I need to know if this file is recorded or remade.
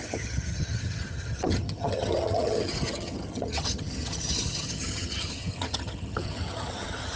remade